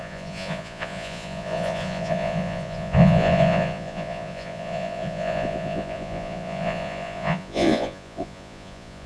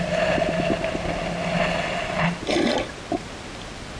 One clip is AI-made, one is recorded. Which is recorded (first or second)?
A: second